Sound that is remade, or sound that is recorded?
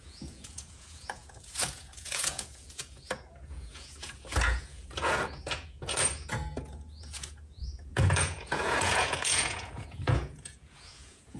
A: remade